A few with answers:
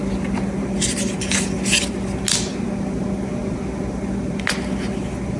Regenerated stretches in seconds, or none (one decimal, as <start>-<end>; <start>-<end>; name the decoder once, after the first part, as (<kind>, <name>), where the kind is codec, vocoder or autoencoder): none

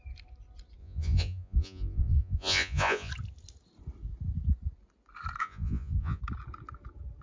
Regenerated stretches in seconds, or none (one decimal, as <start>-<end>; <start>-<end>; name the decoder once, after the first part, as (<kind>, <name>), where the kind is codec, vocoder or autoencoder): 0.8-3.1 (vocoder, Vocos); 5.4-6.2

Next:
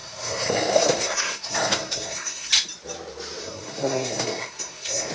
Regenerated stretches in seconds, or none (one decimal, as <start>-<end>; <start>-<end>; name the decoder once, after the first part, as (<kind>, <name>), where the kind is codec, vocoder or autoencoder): 0.0-2.5 (codec, SNAC); 3.4-5.1

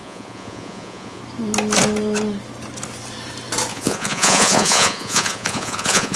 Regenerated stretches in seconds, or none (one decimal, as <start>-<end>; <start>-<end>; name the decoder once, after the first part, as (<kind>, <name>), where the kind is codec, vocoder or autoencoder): 0.0-1.2 (vocoder, Vocos); 3.7-6.2

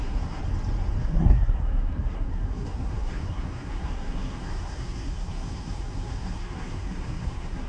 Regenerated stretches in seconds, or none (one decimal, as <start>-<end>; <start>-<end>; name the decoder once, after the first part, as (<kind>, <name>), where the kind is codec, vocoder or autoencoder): 0.0-0.4 (codec, SNAC); 1.0-7.7

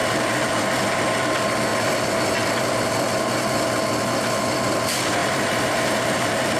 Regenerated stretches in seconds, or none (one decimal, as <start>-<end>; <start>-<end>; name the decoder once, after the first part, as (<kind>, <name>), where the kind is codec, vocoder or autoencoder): 1.7-2.8 (vocoder, BigVGAN v2); 5.2-6.6

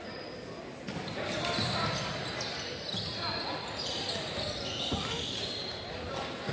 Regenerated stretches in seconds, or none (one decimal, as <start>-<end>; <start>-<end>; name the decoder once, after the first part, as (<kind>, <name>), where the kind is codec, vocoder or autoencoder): none

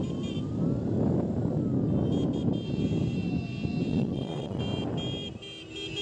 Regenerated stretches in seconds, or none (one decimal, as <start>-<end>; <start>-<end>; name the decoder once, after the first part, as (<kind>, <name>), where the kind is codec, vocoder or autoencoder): 3.9-4.6 (vocoder, Vocos)